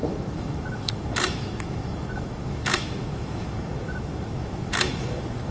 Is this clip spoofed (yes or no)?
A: yes